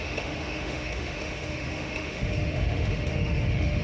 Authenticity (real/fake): fake